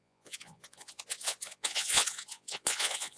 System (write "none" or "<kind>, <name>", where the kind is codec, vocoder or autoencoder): vocoder, Vocos